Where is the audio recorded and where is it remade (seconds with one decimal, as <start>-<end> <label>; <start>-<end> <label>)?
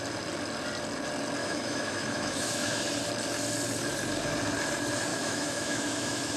0.0-1.4 recorded; 1.4-2.8 remade; 2.8-5.1 recorded; 5.1-6.4 remade